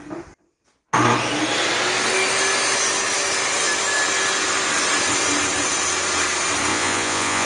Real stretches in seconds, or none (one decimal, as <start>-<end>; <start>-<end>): 0.0-6.7